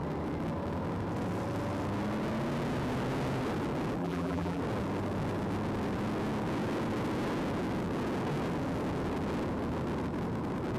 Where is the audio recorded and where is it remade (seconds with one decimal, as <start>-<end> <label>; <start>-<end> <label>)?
0.0-4.0 recorded; 4.0-4.6 remade; 4.6-10.8 recorded